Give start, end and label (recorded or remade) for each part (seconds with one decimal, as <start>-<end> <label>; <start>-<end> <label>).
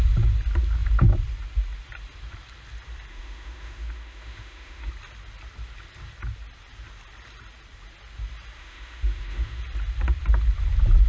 0.0-3.1 recorded; 3.1-4.9 remade; 4.9-8.6 recorded; 8.6-9.6 remade; 9.6-11.1 recorded